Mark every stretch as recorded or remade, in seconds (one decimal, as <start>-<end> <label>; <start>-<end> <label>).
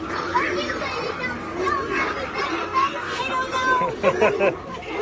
0.0-2.6 recorded; 2.6-3.3 remade; 3.3-5.0 recorded